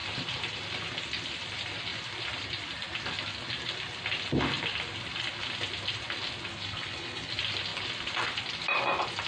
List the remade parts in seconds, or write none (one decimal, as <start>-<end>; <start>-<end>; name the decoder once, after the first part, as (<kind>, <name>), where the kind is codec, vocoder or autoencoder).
6.5-7.3 (codec, HILCodec)